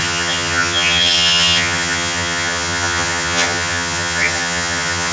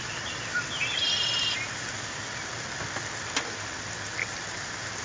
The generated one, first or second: first